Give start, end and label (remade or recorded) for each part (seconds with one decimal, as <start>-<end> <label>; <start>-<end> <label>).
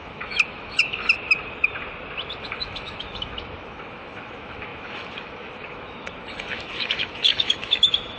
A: 0.0-1.0 remade; 1.0-2.4 recorded; 2.4-8.2 remade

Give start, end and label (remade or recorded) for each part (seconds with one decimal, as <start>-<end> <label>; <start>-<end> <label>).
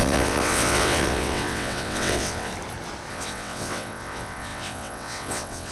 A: 0.0-2.5 remade; 2.5-3.1 recorded; 3.1-5.7 remade